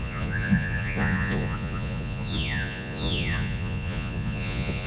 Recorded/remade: remade